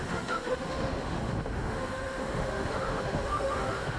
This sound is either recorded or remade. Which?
remade